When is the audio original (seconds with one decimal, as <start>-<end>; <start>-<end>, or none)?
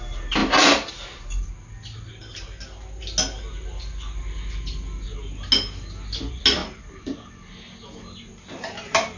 0.0-9.2